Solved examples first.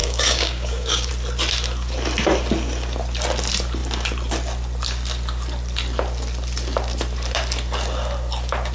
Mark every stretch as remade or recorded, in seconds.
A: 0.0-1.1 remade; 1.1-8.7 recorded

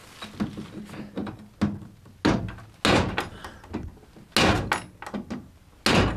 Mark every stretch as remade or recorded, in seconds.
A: 0.0-6.2 recorded

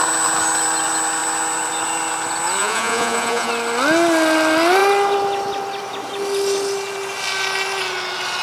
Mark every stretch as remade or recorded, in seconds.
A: 0.0-2.6 recorded; 2.6-3.5 remade; 3.5-8.4 recorded

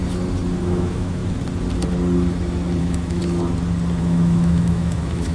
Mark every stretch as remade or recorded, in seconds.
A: 0.0-0.6 recorded; 0.6-1.2 remade; 1.2-2.8 recorded; 2.8-3.2 remade; 3.2-4.0 recorded; 4.0-5.3 remade

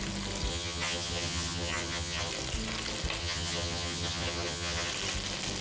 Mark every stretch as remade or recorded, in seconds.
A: 0.0-0.5 recorded; 0.5-2.3 remade; 2.3-3.2 recorded; 3.2-4.9 remade; 4.9-5.6 recorded

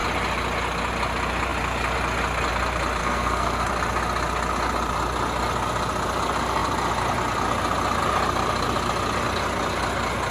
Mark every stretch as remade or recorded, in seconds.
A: 0.0-3.0 recorded; 3.0-3.7 remade; 3.7-10.3 recorded